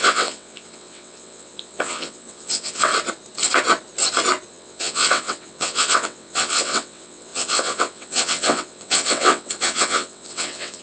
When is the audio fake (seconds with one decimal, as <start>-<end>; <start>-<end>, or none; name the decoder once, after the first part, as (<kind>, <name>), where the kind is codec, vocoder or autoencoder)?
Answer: 0.0-2.9 (vocoder, WaveNeXt); 4.5-10.8